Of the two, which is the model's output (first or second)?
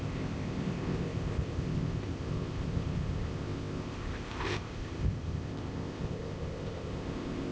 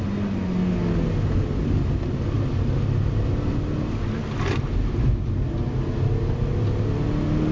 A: first